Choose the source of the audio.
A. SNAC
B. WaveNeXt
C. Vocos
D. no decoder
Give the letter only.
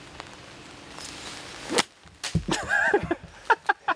D